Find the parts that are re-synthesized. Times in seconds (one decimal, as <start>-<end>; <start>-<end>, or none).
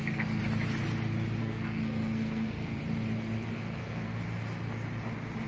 0.0-0.4; 1.4-2.8; 3.5-4.1